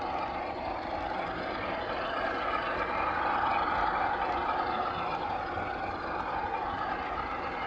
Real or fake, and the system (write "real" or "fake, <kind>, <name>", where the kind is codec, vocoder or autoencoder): real